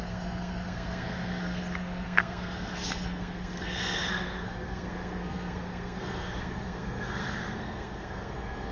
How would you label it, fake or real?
fake